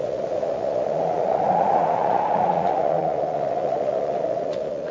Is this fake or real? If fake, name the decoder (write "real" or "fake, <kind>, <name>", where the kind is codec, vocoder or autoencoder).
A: fake, vocoder, Vocos